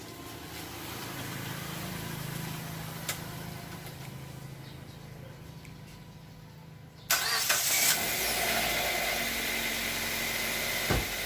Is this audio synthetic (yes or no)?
no